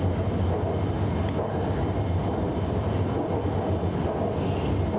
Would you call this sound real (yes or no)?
yes